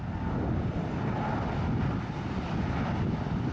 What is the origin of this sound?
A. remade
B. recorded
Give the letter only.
B